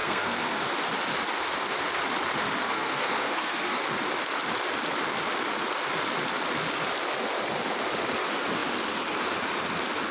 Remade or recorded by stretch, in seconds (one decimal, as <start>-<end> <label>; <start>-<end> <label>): 0.0-0.7 remade; 0.7-2.6 recorded; 2.6-3.8 remade; 3.8-10.1 recorded